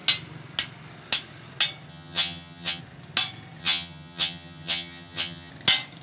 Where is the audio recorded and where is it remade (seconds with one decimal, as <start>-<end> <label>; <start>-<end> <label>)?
0.0-1.9 recorded; 1.9-2.8 remade; 2.8-3.6 recorded; 3.6-5.5 remade; 5.5-6.0 recorded